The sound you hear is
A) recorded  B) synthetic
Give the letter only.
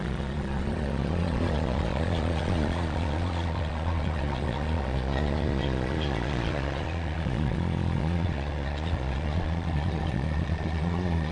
B